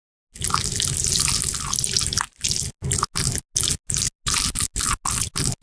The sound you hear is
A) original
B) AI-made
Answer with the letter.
A